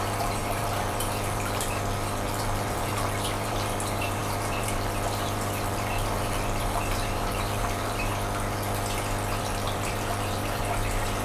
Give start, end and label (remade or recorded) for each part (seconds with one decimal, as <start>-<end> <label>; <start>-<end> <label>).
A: 0.0-8.1 remade; 8.1-9.4 recorded; 9.4-11.2 remade